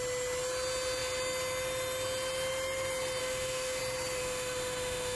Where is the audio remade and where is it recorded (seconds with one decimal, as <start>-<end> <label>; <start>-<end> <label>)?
0.0-3.2 recorded; 3.2-3.8 remade; 3.8-4.2 recorded; 4.2-5.2 remade